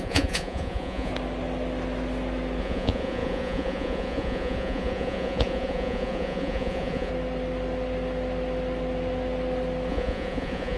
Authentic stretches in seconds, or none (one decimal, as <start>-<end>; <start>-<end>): 1.1-2.6; 7.1-9.9